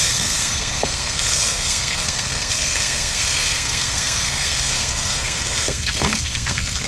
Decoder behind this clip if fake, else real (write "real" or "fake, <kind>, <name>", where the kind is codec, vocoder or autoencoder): fake, codec, SNAC